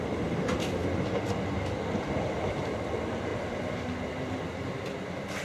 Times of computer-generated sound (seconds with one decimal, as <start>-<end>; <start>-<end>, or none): none